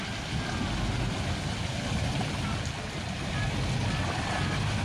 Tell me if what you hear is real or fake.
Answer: real